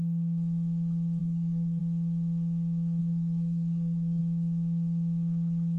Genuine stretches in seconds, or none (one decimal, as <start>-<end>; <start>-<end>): 0.0-1.2; 1.8-3.0; 4.2-5.8